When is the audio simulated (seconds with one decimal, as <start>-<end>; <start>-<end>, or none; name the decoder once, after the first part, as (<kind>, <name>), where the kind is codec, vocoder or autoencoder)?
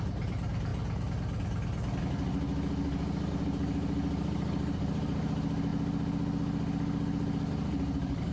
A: 0.0-0.7 (vocoder, BigVGAN v2); 3.3-5.7; 7.5-8.3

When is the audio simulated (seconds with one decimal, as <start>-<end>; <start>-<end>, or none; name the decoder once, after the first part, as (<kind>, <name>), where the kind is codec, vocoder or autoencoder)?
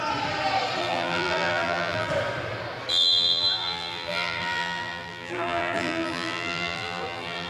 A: 0.8-2.1 (vocoder, BigVGAN v2); 2.9-7.5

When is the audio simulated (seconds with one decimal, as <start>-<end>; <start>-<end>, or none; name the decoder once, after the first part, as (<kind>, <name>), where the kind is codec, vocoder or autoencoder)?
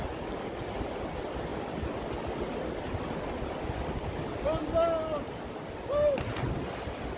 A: none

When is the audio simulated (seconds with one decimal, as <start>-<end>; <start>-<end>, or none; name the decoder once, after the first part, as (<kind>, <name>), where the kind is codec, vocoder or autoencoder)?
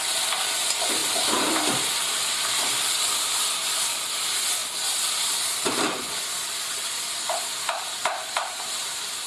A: 1.0-1.6 (vocoder, BigVGAN v2); 7.5-8.9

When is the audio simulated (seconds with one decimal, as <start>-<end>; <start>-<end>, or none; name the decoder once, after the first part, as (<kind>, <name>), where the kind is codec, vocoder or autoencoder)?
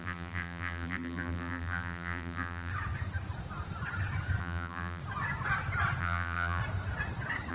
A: 0.0-2.7 (vocoder, BigVGAN v2); 4.4-5.0; 6.0-6.6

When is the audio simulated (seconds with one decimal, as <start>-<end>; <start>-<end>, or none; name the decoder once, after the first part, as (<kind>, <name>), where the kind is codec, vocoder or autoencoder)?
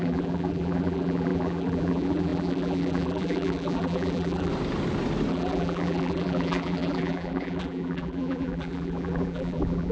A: 0.0-4.5 (vocoder, BigVGAN v2); 5.3-9.9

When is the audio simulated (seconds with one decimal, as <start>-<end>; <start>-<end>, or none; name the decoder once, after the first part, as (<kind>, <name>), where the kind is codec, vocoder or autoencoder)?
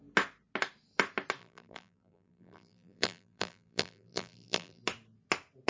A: 1.4-4.8 (vocoder, BigVGAN v2)